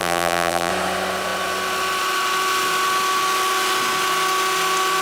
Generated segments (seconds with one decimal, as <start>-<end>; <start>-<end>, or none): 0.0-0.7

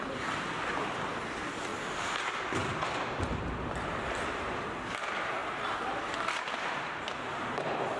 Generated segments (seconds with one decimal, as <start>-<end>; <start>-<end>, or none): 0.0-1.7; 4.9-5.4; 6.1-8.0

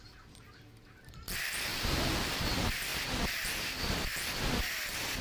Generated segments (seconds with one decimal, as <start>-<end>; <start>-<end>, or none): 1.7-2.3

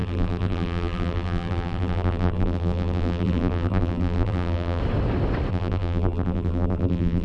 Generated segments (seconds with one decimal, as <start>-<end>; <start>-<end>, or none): 0.0-4.8; 5.5-7.2